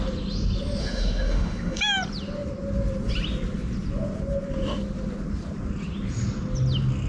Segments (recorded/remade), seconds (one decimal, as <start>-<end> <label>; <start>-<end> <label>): 0.0-0.8 recorded; 0.8-1.8 remade; 1.8-7.1 recorded